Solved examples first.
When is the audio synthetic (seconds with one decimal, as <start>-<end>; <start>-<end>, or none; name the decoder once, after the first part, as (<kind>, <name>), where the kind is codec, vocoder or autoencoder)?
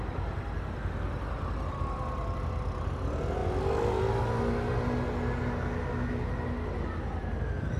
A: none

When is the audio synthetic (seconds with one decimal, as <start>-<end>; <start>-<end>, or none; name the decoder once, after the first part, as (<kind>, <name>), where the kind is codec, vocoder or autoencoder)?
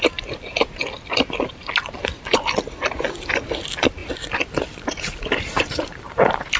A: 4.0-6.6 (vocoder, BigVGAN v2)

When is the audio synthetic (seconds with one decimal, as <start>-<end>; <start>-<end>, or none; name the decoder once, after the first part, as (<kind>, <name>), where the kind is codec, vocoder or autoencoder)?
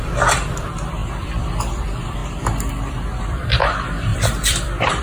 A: 0.0-2.2 (vocoder, BigVGAN v2); 3.2-5.0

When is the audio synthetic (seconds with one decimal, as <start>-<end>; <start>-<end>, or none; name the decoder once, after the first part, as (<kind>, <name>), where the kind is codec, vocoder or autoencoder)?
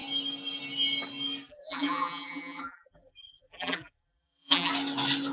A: 1.5-4.7 (vocoder, BigVGAN v2)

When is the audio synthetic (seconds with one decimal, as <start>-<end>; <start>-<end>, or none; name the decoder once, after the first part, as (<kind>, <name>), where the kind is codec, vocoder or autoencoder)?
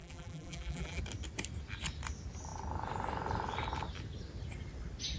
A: 0.0-1.0 (vocoder, BigVGAN v2)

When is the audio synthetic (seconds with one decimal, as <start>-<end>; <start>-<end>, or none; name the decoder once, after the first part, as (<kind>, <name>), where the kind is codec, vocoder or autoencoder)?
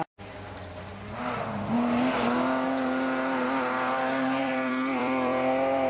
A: 0.0-0.9 (vocoder, BigVGAN v2); 4.4-5.9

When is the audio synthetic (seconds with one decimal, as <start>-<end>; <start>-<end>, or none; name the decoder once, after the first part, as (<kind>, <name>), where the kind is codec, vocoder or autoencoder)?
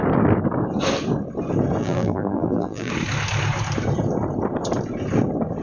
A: 1.8-2.9 (vocoder, BigVGAN v2)